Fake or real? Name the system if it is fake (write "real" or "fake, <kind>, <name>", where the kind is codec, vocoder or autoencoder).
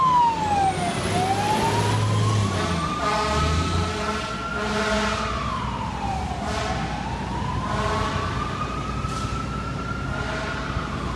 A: real